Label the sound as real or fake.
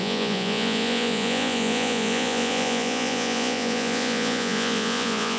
fake